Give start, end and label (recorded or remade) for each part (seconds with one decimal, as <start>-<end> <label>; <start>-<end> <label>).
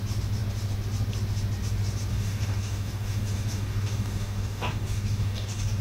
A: 0.0-2.1 recorded; 2.1-5.8 remade